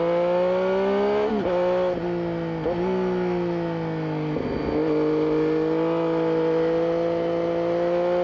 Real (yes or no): yes